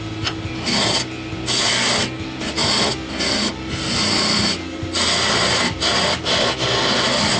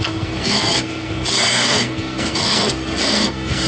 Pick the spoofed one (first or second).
second